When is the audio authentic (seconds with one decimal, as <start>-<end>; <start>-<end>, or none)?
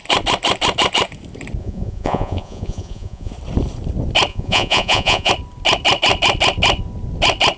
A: 0.0-1.6; 3.3-4.3; 5.3-7.6